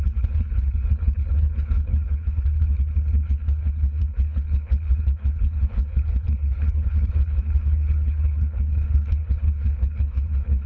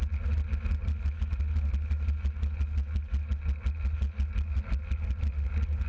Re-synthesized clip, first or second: first